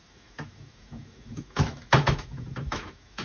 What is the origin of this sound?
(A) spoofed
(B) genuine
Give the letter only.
A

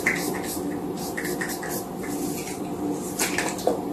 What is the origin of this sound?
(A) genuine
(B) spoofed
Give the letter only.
A